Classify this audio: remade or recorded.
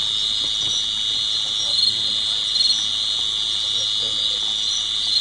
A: recorded